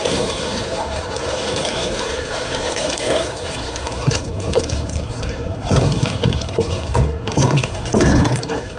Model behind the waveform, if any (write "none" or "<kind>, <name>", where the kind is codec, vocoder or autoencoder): codec, SNAC